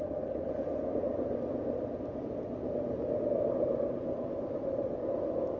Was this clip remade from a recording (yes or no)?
no